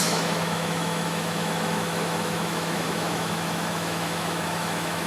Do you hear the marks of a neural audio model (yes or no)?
yes